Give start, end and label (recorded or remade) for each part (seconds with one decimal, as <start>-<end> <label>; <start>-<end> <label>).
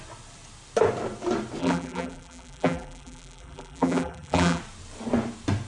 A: 0.0-1.6 recorded; 1.6-4.6 remade; 4.6-5.7 recorded